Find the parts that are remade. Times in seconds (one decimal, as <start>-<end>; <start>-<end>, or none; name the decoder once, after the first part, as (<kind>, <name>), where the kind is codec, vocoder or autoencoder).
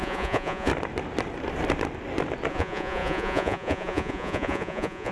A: 0.0-0.7 (vocoder, Vocos); 2.5-5.1